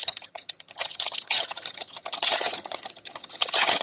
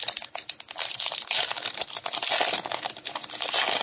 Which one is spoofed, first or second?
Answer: first